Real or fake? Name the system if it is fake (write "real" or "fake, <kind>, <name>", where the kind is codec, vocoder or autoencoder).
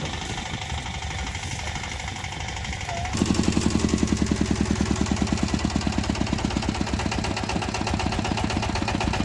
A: real